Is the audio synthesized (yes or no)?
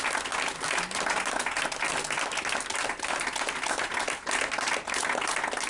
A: no